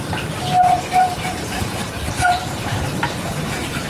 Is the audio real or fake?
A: fake